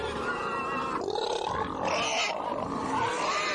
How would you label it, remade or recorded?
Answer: recorded